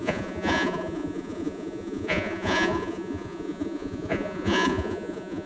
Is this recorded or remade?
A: remade